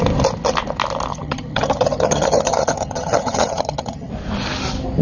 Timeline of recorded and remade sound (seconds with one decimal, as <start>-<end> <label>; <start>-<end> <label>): 0.0-1.1 recorded; 1.1-4.1 remade; 4.1-5.0 recorded